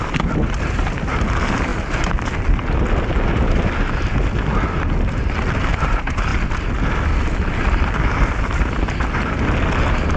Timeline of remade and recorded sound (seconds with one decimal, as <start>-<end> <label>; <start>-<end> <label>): 0.0-10.2 recorded